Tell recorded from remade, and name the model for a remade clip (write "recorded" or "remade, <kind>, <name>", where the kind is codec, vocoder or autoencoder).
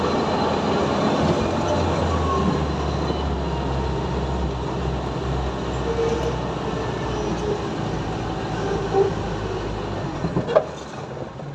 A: recorded